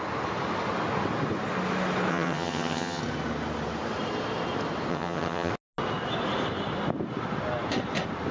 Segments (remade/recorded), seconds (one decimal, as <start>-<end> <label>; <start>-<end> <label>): 0.0-2.1 recorded; 2.1-3.0 remade; 3.0-4.9 recorded; 4.9-5.5 remade; 5.5-8.3 recorded